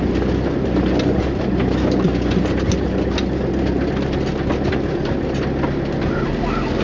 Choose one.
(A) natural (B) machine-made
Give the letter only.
A